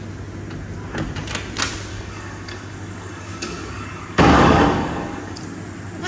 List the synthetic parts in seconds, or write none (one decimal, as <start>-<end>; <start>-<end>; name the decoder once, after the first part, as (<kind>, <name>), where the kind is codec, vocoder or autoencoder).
1.9-5.4 (codec, DAC)